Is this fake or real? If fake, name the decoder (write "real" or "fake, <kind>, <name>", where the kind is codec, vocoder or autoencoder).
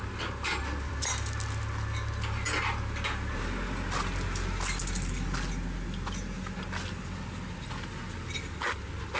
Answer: real